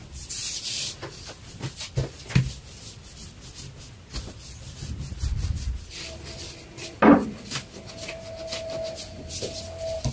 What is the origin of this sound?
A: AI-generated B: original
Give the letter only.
B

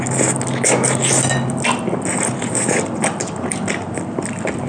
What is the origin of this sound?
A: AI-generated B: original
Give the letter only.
B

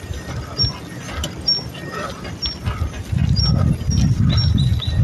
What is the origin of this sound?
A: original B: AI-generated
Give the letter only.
A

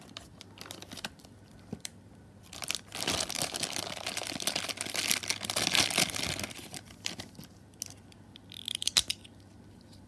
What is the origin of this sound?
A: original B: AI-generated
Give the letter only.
A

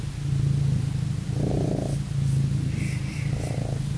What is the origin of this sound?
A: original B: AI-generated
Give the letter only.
A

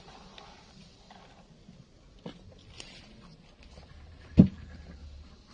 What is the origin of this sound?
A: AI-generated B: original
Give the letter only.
B